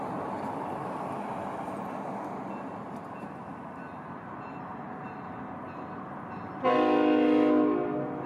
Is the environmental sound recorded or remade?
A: recorded